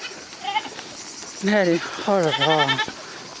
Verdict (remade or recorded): recorded